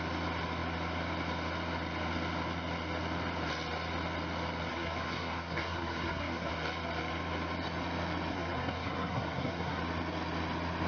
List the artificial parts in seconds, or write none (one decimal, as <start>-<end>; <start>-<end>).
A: 4.7-6.5; 8.3-9.8